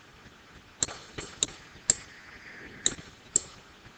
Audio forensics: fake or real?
real